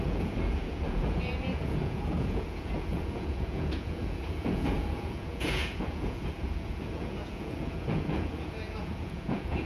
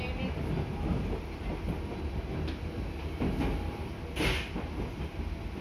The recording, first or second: second